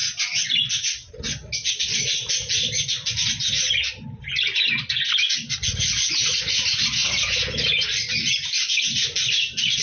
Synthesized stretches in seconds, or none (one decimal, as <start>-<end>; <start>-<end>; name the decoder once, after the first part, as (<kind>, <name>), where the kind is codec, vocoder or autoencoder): none